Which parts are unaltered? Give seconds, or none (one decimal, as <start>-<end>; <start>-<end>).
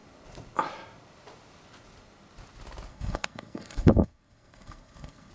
0.0-2.9